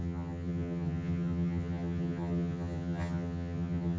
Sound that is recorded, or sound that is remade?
remade